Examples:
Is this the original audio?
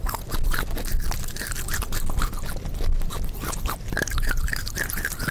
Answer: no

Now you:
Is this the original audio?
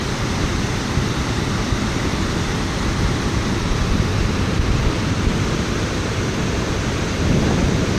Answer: no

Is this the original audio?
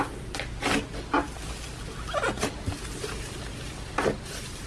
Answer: yes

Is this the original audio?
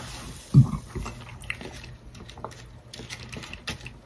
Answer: yes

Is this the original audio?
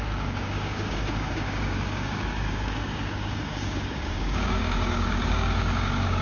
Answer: no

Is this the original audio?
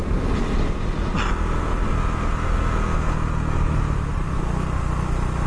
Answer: yes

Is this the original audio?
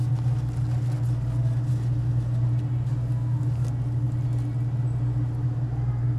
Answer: yes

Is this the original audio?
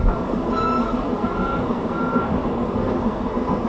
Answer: no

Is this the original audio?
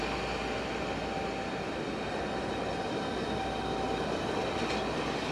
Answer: yes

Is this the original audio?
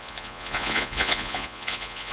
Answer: no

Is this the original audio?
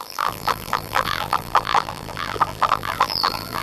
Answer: no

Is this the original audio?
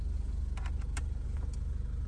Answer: yes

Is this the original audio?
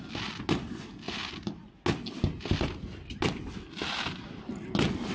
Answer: yes